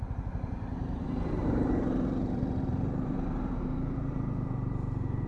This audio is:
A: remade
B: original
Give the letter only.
A